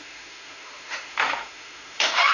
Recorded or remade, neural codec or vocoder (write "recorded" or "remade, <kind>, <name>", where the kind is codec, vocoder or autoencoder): remade, autoencoder, DAC-VAE